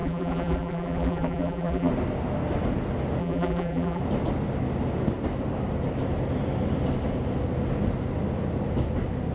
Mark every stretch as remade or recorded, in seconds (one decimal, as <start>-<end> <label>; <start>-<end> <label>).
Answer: 0.0-1.9 remade; 1.9-3.2 recorded; 3.2-4.0 remade; 4.0-9.3 recorded